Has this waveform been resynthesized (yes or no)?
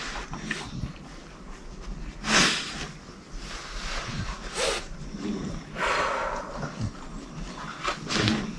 no